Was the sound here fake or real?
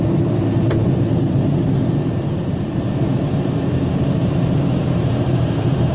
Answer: fake